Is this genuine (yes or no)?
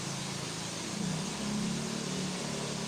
yes